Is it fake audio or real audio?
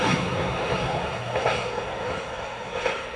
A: fake